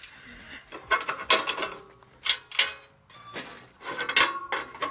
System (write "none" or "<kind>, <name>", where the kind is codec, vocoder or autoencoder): none